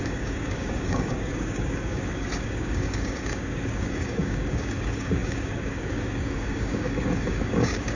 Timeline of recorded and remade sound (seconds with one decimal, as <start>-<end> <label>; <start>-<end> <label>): 0.0-8.0 remade